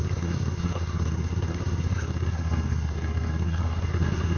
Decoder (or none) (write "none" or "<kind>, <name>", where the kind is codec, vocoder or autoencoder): codec, SNAC